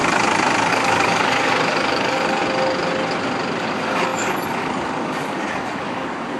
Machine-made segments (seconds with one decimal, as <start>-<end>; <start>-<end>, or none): 0.7-2.4; 3.6-6.4